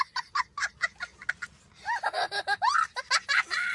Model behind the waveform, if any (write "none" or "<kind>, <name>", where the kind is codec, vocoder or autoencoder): none